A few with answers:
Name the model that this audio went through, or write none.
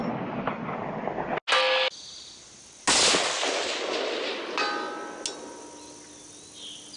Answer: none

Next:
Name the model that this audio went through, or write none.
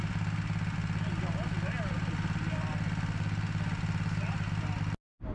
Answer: none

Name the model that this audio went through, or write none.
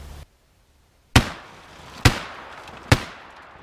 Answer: none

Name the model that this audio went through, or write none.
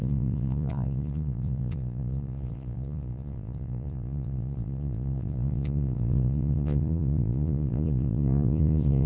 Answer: vocoder, Vocos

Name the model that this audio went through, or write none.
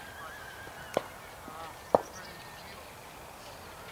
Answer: none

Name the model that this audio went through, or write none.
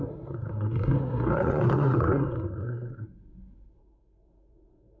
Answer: codec, SNAC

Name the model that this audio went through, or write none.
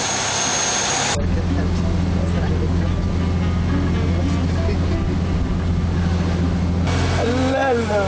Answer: none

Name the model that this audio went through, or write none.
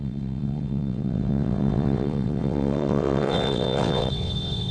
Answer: vocoder, WaveNeXt